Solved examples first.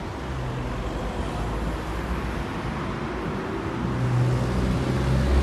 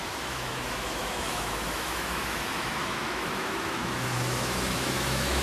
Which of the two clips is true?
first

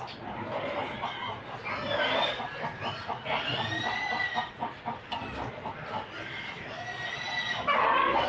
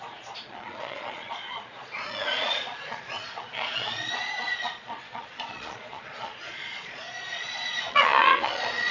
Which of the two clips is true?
first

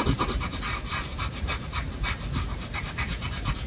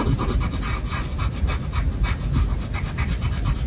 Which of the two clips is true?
second